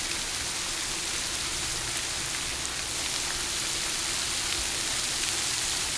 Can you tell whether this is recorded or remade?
recorded